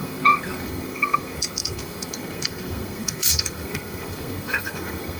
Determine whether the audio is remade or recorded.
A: remade